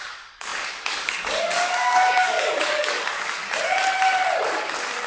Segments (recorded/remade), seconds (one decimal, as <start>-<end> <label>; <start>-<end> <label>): 0.0-3.4 remade; 3.4-4.4 recorded; 4.4-5.1 remade